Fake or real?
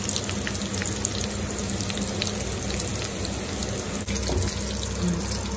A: real